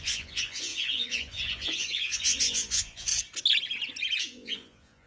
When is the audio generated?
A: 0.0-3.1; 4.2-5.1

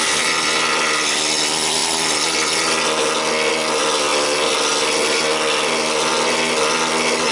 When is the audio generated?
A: none

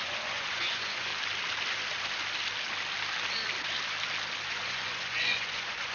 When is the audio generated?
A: 0.0-1.1; 4.5-5.9

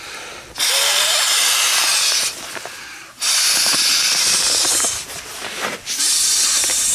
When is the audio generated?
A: none